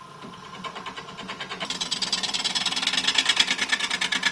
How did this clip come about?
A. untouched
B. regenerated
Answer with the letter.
A